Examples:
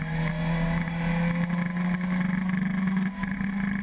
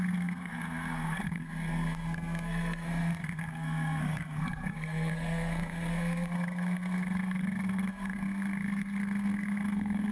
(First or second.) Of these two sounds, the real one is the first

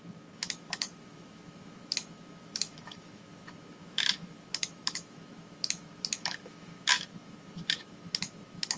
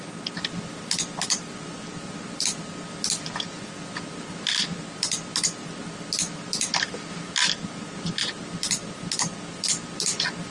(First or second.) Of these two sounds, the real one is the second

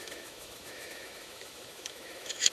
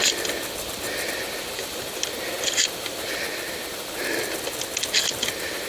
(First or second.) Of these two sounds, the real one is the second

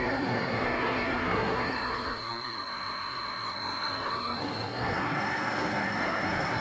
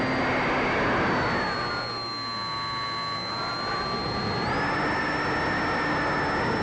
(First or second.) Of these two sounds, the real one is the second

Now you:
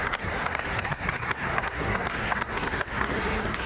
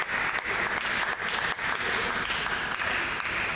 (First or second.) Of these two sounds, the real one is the second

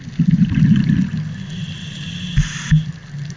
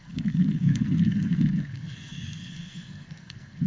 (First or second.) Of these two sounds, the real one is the first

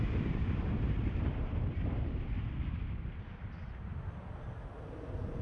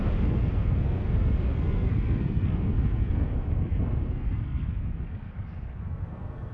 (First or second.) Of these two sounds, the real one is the first